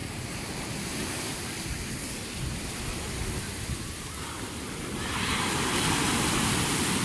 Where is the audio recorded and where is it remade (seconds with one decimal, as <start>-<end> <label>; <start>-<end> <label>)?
0.0-7.0 recorded